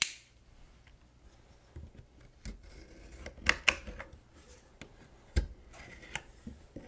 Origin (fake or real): real